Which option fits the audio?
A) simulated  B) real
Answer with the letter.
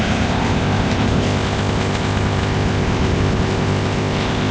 A